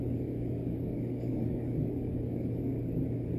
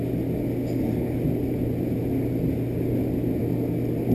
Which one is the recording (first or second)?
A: second